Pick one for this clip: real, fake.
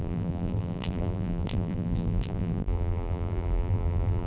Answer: fake